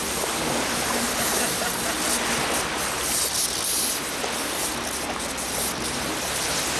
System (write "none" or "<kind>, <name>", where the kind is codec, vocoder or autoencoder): none